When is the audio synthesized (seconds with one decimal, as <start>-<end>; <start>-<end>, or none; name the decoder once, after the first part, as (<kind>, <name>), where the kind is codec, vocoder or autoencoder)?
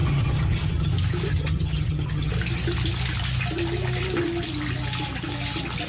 0.0-0.9 (vocoder, HiFi-GAN); 1.3-2.3